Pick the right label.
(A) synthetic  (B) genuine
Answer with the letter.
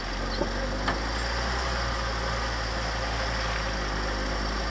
B